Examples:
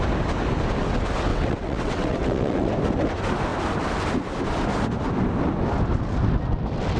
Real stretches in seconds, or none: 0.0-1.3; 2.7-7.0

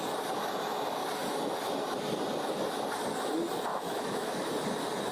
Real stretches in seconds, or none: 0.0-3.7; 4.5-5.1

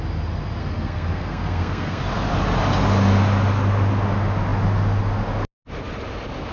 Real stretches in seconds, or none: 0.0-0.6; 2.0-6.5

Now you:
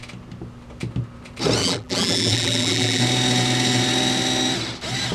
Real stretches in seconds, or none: 0.0-1.6; 3.0-5.1

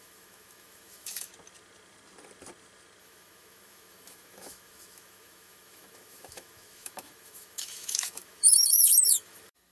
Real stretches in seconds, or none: 1.3-3.0